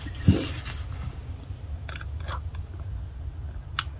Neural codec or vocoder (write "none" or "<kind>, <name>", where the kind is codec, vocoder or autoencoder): none